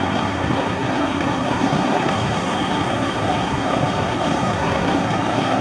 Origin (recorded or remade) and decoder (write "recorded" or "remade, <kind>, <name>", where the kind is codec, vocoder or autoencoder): remade, codec, SNAC